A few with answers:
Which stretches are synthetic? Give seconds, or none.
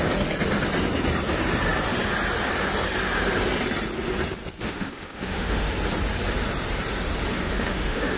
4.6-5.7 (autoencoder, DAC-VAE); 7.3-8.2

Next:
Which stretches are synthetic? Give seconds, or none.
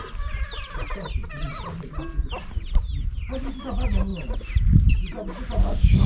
5.6-6.1 (autoencoder, DAC-VAE)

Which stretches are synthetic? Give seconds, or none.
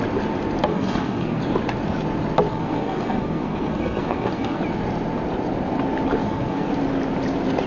0.7-1.4 (codec, SNAC); 2.5-4.6; 6.2-6.7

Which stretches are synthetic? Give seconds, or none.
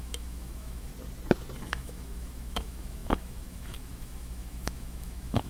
0.0-0.9 (autoencoder, DAC-VAE); 1.7-5.5